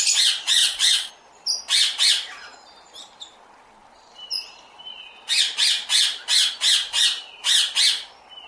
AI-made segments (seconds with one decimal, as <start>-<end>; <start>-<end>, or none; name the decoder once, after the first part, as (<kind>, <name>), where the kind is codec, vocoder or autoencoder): 0.6-1.1 (vocoder, WaveNeXt)